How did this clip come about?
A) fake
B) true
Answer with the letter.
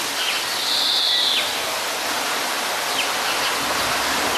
B